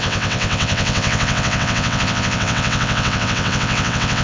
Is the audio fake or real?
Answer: fake